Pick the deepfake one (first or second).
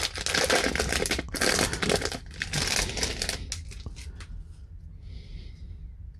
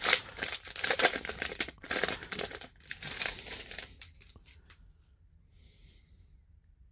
second